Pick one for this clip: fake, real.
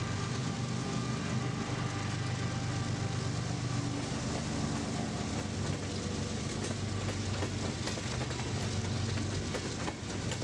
real